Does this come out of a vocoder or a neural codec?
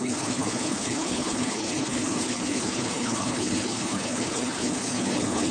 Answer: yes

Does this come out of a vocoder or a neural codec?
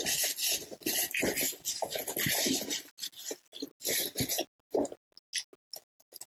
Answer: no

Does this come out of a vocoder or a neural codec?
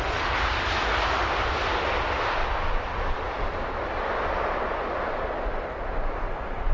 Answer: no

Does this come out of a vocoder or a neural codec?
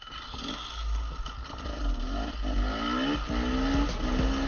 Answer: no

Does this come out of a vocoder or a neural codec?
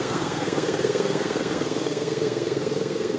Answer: yes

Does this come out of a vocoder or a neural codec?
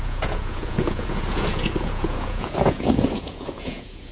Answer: yes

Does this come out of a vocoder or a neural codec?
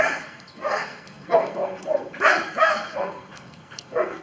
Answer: yes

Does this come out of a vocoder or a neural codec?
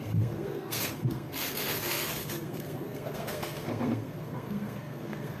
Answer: yes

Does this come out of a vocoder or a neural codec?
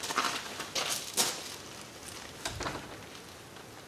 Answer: no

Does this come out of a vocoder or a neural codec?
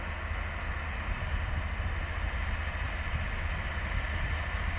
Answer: no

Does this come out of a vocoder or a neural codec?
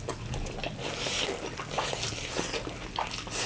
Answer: no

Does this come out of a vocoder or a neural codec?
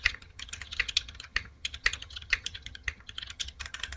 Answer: yes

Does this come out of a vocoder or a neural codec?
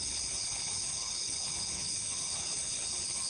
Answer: yes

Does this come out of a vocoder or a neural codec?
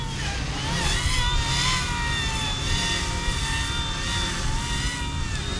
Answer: no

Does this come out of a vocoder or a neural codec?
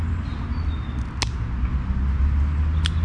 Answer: no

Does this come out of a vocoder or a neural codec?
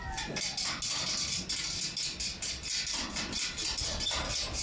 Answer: no